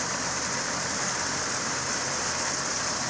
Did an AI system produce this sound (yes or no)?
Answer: yes